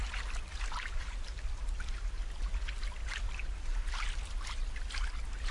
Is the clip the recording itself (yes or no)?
yes